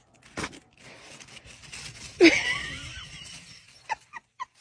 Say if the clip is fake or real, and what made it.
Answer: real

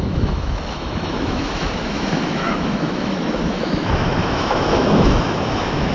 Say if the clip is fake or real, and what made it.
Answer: fake, autoencoder, DAC-VAE